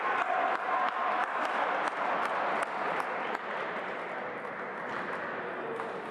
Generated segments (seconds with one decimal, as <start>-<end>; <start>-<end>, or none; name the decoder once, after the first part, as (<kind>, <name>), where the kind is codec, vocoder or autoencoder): none